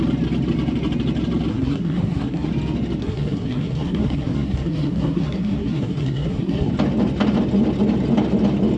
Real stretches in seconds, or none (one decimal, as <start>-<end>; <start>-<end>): 0.0-1.5; 2.5-3.0; 6.7-8.8